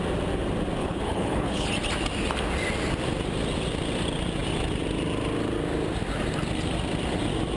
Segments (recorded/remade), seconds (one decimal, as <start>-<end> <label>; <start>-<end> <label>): 0.0-0.8 recorded; 0.8-1.7 remade; 1.7-7.6 recorded